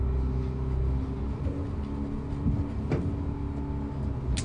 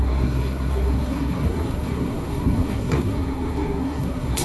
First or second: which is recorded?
first